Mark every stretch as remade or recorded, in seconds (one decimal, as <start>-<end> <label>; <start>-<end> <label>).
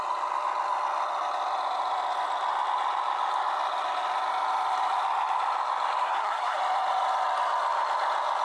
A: 0.0-6.0 recorded; 6.0-6.6 remade; 6.6-8.4 recorded